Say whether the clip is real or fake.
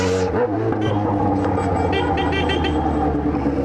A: real